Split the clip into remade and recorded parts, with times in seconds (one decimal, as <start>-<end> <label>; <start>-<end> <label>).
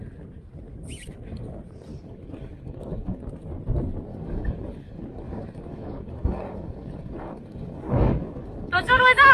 0.0-1.9 recorded; 1.9-3.2 remade; 3.2-4.1 recorded; 4.1-9.3 remade